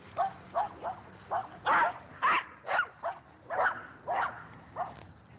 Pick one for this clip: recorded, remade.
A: recorded